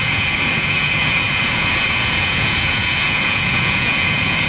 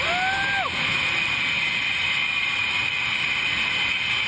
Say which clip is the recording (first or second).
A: second